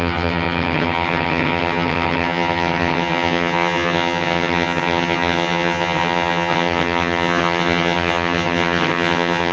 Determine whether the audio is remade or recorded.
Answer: remade